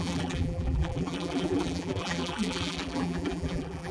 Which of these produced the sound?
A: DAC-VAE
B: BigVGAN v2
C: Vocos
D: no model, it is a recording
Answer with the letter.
B